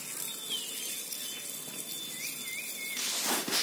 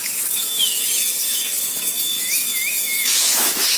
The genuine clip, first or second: first